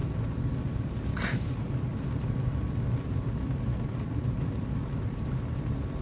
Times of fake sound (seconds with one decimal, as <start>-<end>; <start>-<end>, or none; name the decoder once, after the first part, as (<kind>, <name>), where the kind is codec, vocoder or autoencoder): none